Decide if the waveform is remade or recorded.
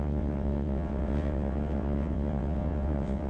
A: remade